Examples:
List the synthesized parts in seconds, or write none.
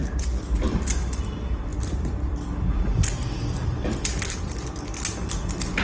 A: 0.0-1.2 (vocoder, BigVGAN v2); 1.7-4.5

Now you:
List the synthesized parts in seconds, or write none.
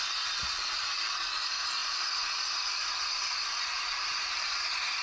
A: 0.4-1.3 (vocoder, BigVGAN v2); 1.8-5.0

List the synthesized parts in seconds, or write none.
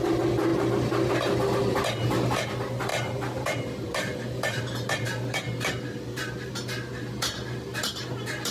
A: 2.9-6.5 (vocoder, BigVGAN v2)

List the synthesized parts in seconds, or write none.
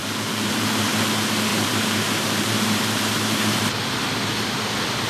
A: 0.0-0.7 (vocoder, BigVGAN v2); 1.5-4.1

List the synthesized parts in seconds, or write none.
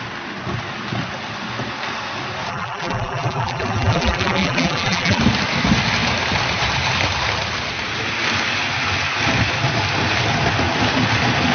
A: 2.5-5.2 (vocoder, BigVGAN v2)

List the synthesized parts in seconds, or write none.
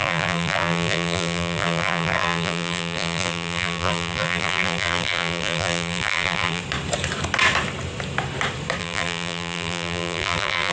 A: 0.0-6.6 (vocoder, BigVGAN v2); 8.8-10.7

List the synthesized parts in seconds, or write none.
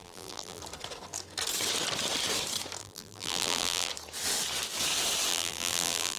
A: 0.0-0.6 (vocoder, BigVGAN v2); 2.8-3.9; 5.3-6.2